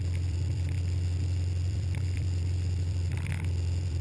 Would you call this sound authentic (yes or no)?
no